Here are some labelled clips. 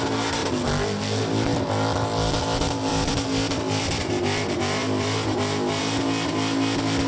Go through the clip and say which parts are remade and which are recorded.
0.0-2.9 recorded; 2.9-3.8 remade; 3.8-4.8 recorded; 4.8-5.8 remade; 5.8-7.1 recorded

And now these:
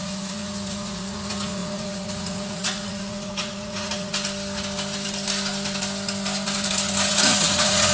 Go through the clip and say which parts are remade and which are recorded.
0.0-4.1 remade; 4.1-7.1 recorded; 7.1-7.9 remade